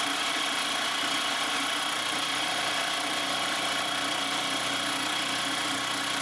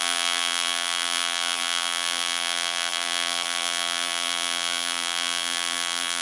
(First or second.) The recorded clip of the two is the first